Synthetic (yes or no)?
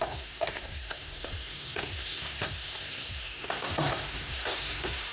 yes